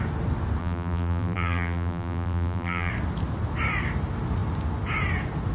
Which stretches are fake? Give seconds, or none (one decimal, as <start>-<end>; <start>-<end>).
0.6-2.9